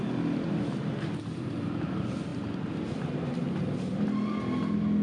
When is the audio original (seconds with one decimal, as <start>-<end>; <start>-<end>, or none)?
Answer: 0.0-5.0